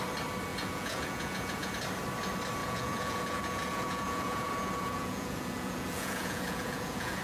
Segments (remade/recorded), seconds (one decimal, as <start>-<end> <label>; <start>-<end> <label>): 0.0-0.5 recorded; 0.5-1.7 remade; 1.7-2.6 recorded; 2.6-7.2 remade